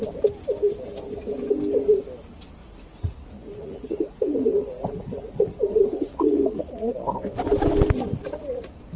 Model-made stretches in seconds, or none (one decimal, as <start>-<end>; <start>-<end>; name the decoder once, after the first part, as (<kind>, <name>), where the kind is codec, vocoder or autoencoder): 2.6-6.9 (vocoder, Vocos)